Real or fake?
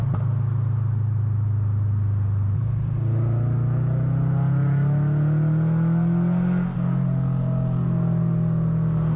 real